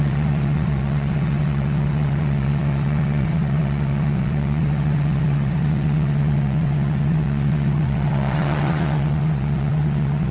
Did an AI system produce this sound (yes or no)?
yes